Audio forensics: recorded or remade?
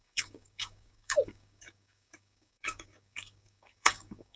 remade